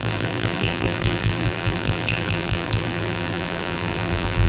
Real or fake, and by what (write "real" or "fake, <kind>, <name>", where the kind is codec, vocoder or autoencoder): fake, vocoder, BigVGAN v2